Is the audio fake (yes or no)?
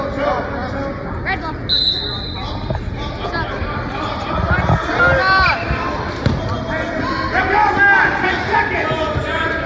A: no